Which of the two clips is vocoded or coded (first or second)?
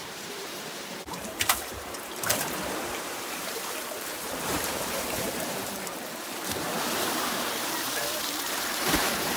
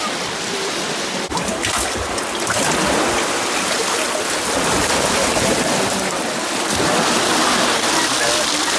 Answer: first